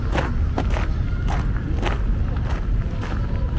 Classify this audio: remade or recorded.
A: recorded